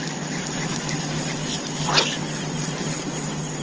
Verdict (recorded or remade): recorded